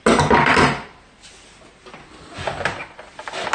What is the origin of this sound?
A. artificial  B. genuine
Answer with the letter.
B